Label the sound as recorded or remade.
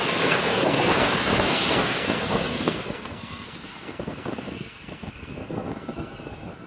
remade